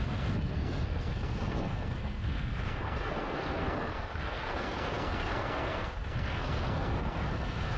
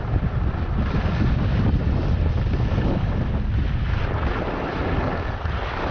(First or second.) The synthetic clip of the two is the first